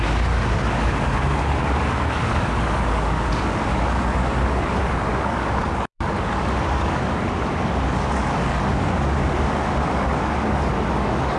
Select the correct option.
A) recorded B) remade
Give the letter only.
B